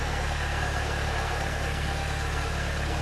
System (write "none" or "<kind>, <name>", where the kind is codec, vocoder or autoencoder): codec, SNAC